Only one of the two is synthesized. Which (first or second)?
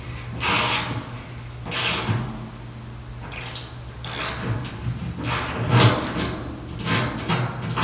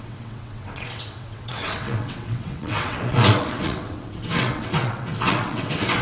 second